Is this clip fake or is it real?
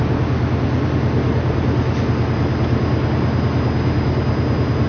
real